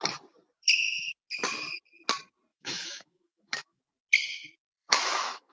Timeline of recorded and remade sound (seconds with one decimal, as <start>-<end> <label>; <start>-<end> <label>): 0.0-2.5 recorded; 2.5-3.8 remade; 3.8-4.7 recorded; 4.7-5.5 remade